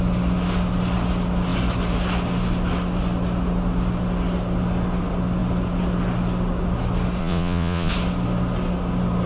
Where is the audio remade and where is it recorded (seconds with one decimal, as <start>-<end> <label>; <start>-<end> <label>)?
0.0-7.2 recorded; 7.2-7.9 remade; 7.9-9.3 recorded